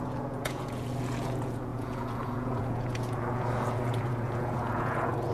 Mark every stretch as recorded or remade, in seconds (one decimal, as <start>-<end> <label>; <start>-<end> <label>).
0.0-5.3 remade